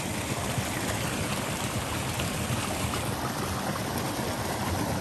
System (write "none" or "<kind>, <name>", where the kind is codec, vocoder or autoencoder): vocoder, BigVGAN v2